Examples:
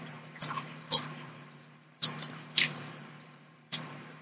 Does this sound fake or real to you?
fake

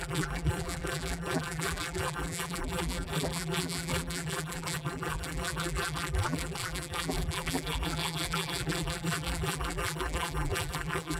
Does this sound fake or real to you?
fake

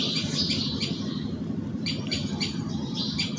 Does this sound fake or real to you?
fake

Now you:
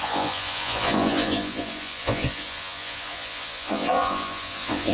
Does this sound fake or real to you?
fake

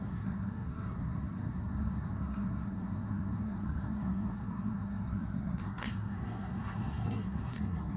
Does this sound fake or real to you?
fake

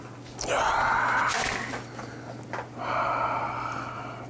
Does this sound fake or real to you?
real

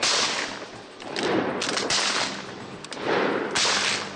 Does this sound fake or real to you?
real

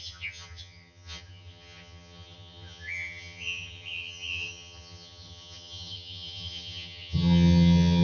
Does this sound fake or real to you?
fake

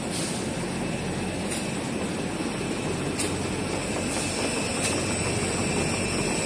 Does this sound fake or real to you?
real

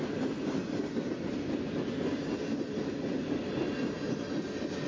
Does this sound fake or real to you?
real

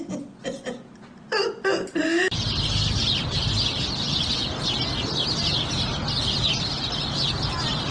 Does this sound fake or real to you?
real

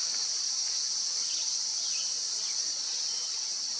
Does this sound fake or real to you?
real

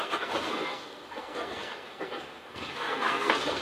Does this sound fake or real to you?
fake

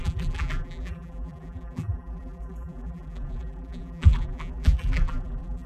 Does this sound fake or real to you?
fake